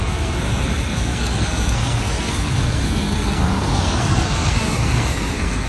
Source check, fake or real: fake